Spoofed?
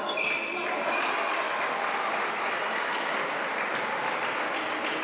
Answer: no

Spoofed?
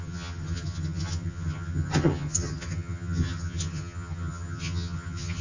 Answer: yes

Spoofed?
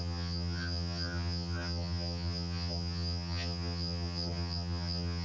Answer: yes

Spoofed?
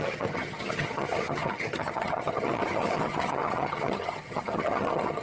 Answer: yes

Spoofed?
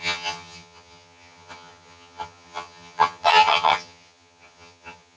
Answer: yes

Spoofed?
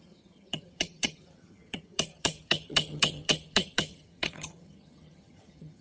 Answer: yes